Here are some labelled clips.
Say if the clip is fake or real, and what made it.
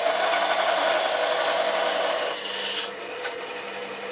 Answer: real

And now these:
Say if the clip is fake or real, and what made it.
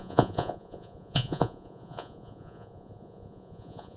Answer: fake, vocoder, Vocos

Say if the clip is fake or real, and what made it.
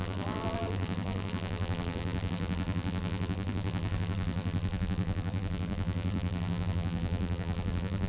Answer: fake, vocoder, BigVGAN v2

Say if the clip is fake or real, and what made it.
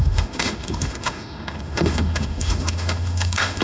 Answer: fake, autoencoder, DAC-VAE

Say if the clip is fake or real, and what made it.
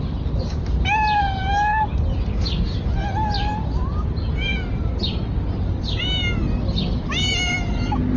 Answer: real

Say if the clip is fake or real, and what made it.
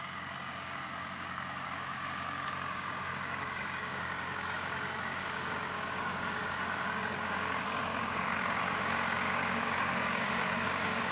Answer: fake, codec, DAC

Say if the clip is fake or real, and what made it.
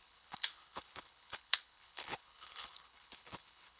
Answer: fake, codec, HILCodec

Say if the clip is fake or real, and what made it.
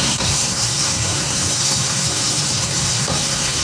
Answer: fake, codec, SNAC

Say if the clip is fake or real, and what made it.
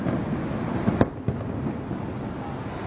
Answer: real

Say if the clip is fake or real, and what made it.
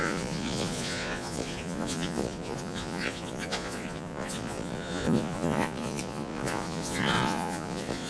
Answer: fake, vocoder, Vocos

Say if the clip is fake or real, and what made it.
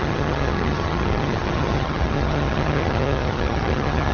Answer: fake, vocoder, HiFi-GAN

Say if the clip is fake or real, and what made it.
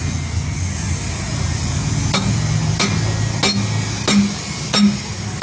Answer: real